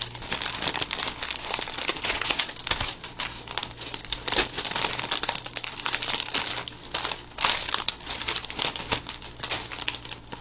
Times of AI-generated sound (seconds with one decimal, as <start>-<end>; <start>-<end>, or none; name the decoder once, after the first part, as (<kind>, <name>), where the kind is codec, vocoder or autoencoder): 1.9-2.5 (vocoder, Vocos)

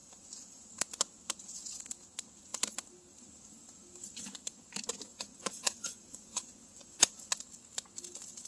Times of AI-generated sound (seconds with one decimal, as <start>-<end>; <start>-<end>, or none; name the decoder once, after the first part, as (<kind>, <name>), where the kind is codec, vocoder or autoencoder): 0.0-0.7 (vocoder, Vocos); 5.1-7.3

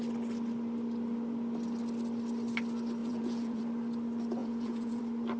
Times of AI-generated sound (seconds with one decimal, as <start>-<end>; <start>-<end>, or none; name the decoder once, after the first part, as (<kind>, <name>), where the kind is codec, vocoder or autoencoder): 3.0-3.6 (vocoder, Vocos); 4.4-5.0

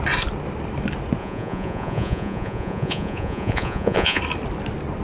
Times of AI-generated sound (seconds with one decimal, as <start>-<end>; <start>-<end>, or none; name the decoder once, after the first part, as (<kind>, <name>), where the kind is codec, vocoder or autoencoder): 1.2-4.2 (vocoder, Vocos)

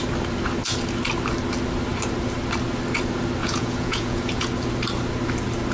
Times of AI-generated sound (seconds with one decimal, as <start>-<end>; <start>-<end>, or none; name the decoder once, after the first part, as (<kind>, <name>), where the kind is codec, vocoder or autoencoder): 3.4-4.5 (vocoder, Vocos)

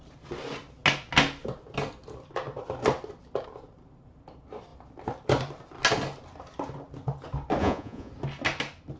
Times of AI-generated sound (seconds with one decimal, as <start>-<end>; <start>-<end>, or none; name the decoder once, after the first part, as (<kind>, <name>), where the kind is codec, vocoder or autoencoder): 7.6-8.1 (vocoder, Vocos)